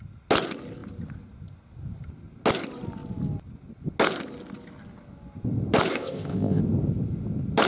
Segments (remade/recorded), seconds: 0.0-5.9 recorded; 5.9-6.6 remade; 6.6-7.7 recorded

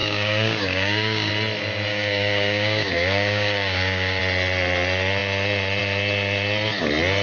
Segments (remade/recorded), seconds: 0.0-1.3 remade; 1.3-1.9 recorded; 1.9-4.2 remade; 4.2-7.2 recorded

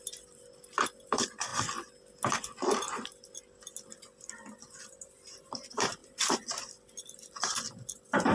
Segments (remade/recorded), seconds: 0.0-1.5 remade; 1.5-4.8 recorded; 4.8-6.0 remade; 6.0-6.6 recorded; 6.6-8.3 remade

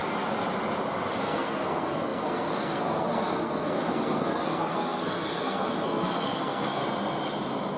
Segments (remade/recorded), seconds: 0.0-1.2 recorded; 1.2-6.8 remade; 6.8-7.8 recorded

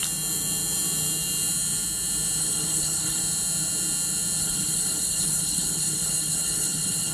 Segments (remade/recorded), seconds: 0.0-2.4 recorded; 2.4-3.2 remade; 3.2-4.4 recorded; 4.4-7.1 remade